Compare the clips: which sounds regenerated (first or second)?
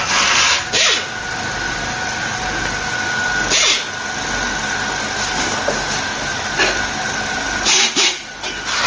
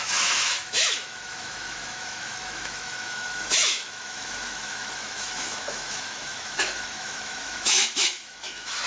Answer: second